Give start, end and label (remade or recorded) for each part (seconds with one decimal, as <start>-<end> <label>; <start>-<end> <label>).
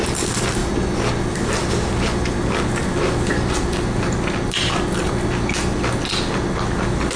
0.0-7.2 recorded